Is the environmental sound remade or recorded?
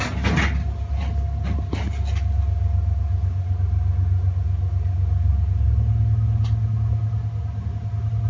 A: recorded